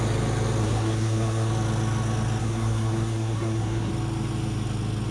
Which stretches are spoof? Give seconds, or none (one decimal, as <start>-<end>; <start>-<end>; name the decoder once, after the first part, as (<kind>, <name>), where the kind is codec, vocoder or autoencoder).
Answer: 0.6-1.5 (codec, SNAC); 2.4-3.9